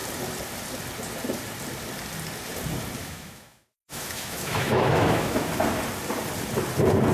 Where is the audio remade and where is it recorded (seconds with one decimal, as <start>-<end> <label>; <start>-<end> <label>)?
0.0-3.0 recorded; 3.0-5.5 remade; 5.5-7.1 recorded

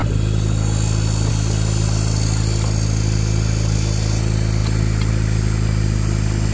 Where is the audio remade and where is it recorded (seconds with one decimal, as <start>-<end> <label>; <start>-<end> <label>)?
0.0-6.5 recorded

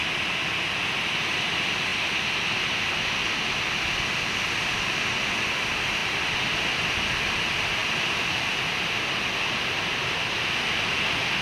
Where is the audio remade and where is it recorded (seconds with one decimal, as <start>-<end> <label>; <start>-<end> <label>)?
0.0-11.4 recorded

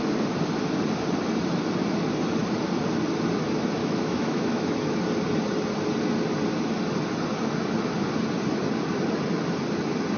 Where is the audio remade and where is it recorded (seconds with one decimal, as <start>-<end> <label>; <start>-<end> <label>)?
0.0-3.8 recorded; 3.8-5.0 remade; 5.0-10.2 recorded

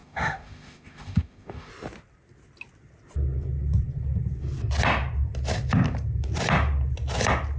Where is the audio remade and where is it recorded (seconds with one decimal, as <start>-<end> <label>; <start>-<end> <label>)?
0.0-1.7 remade; 1.7-7.6 recorded